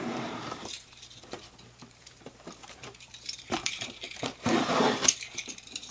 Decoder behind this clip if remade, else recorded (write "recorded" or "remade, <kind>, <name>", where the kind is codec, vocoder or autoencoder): remade, vocoder, BigVGAN v2